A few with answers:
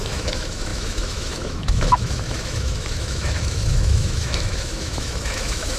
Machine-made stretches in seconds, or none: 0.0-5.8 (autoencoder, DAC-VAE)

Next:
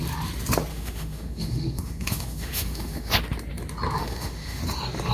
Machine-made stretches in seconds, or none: 0.7-3.1 (autoencoder, DAC-VAE); 4.0-4.6

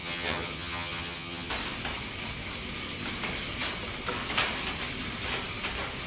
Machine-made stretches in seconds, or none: 0.0-1.5 (vocoder, HiFi-GAN)

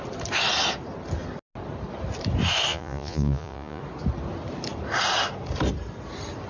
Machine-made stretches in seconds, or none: 2.7-3.8 (vocoder, Vocos)

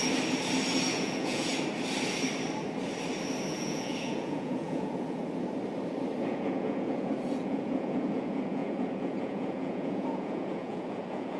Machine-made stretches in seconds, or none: 0.9-1.5 (vocoder, Vocos); 3.5-5.2; 6.2-11.4

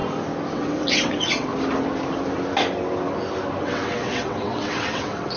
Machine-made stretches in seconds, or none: 0.5-1.5 (vocoder, WaveNeXt); 3.6-5.4

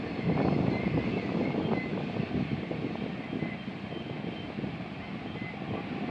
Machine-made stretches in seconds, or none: none

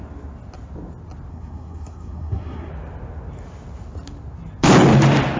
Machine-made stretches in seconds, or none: 1.3-2.7 (codec, SNAC)